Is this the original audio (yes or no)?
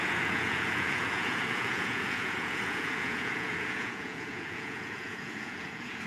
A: no